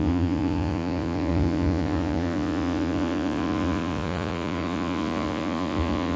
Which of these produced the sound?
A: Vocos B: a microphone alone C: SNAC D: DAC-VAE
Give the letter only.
A